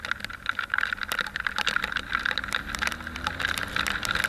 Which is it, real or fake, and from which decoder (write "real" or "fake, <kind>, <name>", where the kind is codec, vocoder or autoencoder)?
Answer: real